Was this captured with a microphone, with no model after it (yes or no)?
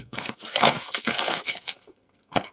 no